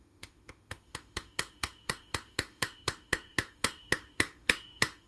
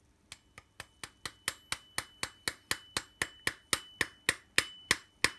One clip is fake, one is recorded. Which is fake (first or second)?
first